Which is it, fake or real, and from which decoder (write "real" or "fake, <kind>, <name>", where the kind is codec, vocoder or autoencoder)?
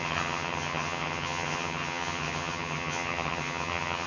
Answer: fake, vocoder, HiFi-GAN